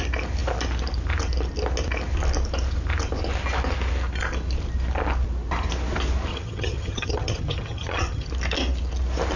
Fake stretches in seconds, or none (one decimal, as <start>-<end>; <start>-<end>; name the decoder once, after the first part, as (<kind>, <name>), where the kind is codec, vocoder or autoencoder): 6.3-8.3 (vocoder, HiFi-GAN)